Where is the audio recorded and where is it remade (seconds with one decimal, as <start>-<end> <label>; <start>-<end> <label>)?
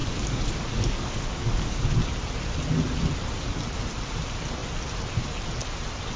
0.0-1.8 remade; 1.8-6.2 recorded